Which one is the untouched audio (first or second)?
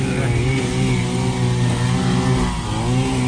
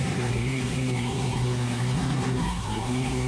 first